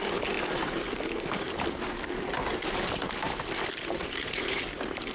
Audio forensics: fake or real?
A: real